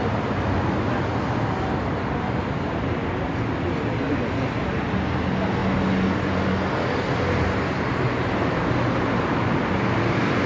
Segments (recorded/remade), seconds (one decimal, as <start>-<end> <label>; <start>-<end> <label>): 0.0-10.5 recorded